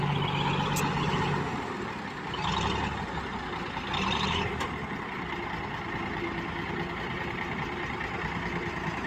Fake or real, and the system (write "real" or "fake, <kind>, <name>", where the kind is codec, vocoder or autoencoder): real